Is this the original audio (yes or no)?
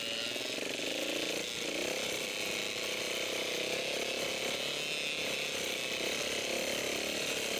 yes